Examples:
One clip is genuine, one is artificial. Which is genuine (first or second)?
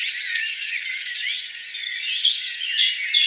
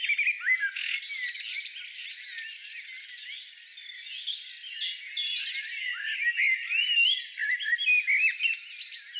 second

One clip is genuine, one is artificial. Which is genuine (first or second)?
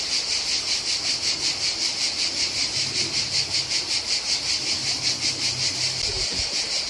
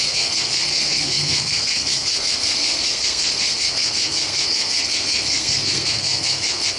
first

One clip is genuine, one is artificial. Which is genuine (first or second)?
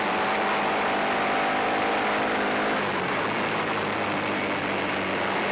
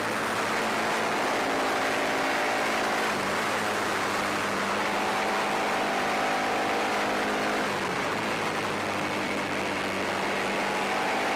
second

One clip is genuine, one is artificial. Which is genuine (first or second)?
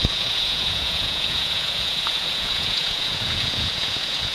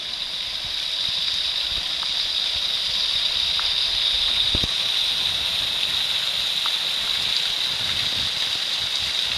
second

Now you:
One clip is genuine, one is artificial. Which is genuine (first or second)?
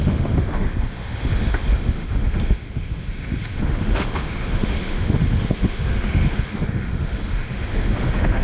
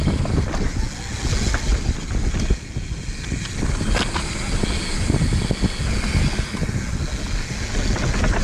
second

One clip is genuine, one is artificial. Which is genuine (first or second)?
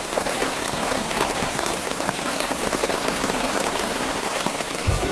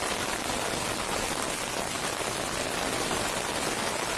second